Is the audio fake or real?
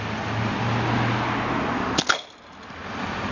real